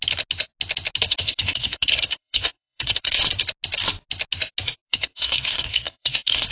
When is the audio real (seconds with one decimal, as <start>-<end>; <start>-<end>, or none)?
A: 0.0-1.0; 3.3-4.9